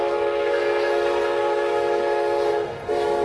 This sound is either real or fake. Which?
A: fake